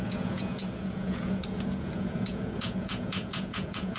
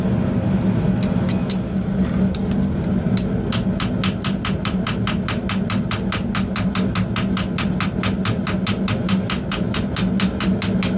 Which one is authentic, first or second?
second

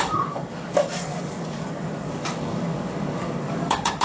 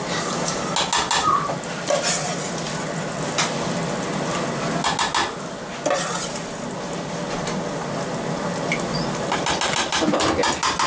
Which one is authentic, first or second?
second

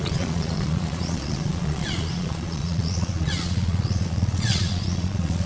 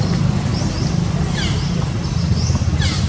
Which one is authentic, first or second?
second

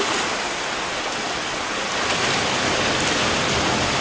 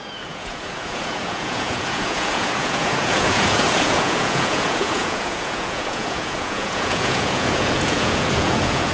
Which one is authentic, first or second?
first